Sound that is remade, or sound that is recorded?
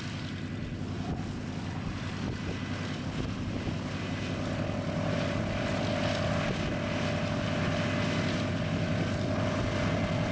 recorded